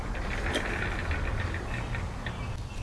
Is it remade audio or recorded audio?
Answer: recorded